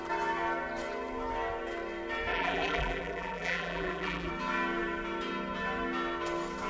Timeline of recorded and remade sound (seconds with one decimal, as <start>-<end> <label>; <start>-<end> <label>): 0.0-2.3 recorded; 2.3-4.3 remade; 4.3-6.7 recorded